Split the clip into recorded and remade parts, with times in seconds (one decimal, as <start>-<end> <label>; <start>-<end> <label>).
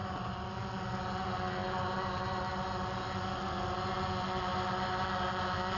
0.0-5.8 recorded